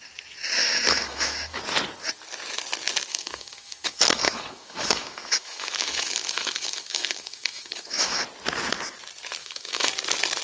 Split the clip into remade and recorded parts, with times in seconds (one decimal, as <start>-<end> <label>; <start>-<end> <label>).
0.0-0.6 recorded; 0.6-1.6 remade; 1.6-3.1 recorded; 3.1-8.2 remade; 8.2-9.4 recorded; 9.4-9.9 remade; 9.9-10.4 recorded